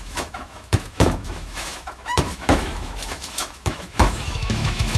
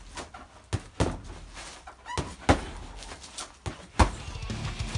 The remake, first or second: first